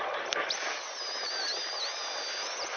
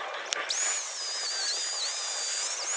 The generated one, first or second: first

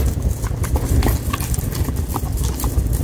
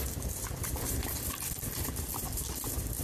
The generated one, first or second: second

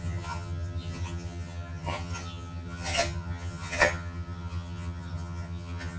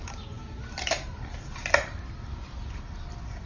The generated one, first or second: first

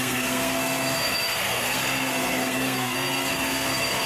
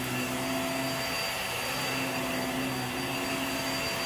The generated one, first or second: first